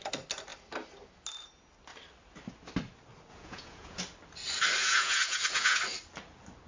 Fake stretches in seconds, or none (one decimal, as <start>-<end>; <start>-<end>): 3.3-4.0; 4.8-5.8